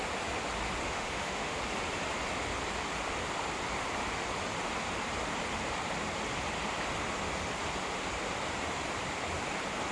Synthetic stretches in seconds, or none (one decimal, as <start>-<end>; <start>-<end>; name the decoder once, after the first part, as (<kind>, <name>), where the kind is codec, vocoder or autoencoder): 0.8-1.6 (autoencoder, DAC-VAE)